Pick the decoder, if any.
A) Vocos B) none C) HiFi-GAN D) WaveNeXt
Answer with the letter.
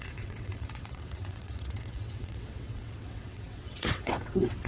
D